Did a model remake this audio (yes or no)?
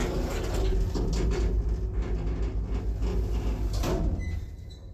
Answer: no